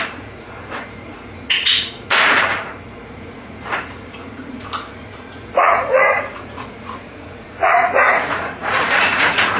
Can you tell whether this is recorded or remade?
remade